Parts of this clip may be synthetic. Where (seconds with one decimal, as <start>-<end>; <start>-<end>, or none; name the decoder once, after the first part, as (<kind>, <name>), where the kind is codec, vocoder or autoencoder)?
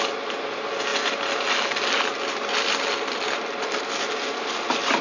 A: none